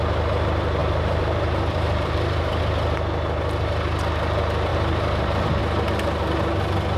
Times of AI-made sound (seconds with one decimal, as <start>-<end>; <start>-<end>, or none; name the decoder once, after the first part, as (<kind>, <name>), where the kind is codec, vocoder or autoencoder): 0.8-2.6 (vocoder, BigVGAN v2); 4.7-5.6